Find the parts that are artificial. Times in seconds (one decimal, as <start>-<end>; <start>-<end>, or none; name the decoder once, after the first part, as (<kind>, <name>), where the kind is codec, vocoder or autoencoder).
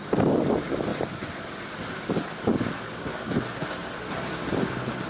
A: none